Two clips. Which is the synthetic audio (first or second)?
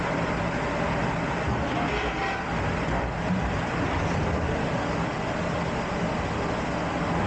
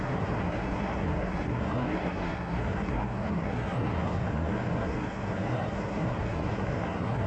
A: second